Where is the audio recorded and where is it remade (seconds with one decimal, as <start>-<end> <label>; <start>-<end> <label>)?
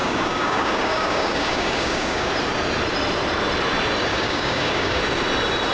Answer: 0.0-2.3 remade; 2.3-4.1 recorded; 4.1-5.0 remade; 5.0-5.7 recorded